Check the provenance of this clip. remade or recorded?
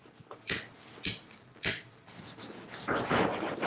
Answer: recorded